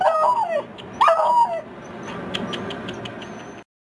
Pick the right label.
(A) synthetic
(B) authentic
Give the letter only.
B